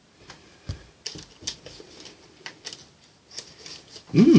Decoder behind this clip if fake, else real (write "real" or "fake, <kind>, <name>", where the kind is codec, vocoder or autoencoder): real